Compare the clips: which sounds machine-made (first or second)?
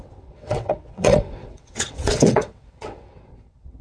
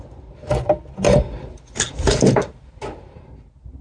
first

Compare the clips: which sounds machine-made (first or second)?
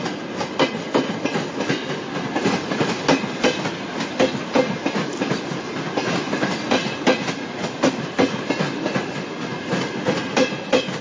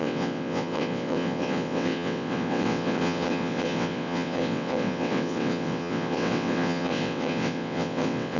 second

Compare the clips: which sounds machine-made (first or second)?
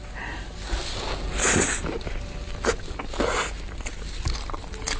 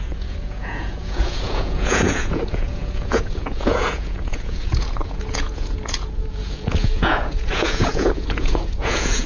second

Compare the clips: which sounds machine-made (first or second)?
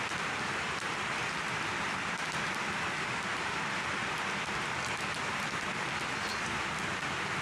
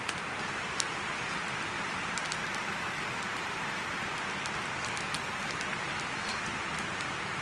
second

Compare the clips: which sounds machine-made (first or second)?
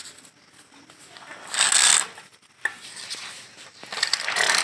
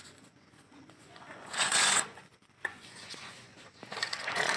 second